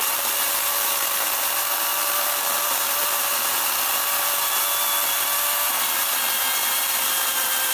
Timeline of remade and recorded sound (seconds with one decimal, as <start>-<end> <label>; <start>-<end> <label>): 0.0-7.7 recorded